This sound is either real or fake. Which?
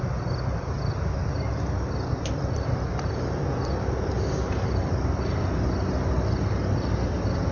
real